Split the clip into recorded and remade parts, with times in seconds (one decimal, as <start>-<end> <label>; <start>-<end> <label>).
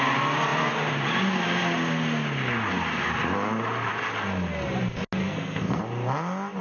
0.0-5.2 recorded; 5.2-5.8 remade; 5.8-6.6 recorded